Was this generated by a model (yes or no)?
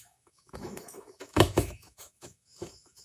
yes